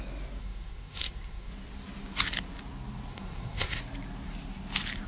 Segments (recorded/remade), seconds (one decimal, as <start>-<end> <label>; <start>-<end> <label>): 0.0-0.4 recorded; 0.4-1.5 remade; 1.5-3.1 recorded; 3.1-3.8 remade; 3.8-5.1 recorded